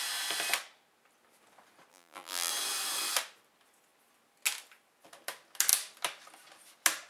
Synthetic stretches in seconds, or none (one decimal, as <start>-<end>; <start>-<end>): 1.9-2.5